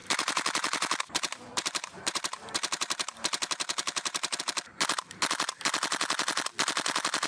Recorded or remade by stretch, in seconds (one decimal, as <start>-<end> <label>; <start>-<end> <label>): 0.0-4.4 remade; 4.4-7.3 recorded

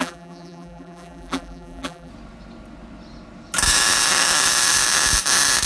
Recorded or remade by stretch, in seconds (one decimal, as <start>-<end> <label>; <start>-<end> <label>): 0.0-2.1 remade; 2.1-5.7 recorded

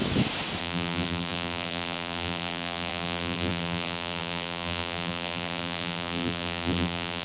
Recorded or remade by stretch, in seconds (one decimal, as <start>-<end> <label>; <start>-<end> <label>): 0.0-0.6 recorded; 0.6-7.2 remade

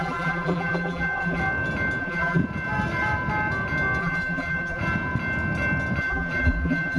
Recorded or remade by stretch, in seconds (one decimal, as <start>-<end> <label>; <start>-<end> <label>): 0.0-1.4 remade; 1.4-2.0 recorded; 2.0-2.4 remade; 2.4-4.0 recorded; 4.0-4.8 remade; 4.8-6.0 recorded; 6.0-7.0 remade

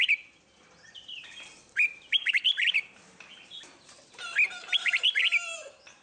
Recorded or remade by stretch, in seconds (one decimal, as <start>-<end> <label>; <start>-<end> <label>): 0.0-6.0 recorded